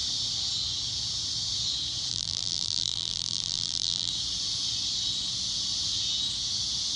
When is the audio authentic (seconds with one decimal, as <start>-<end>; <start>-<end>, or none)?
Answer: 0.0-2.1; 4.1-7.0